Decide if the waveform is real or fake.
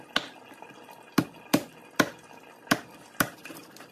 real